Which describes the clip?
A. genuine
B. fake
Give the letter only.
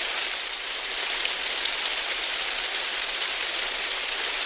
A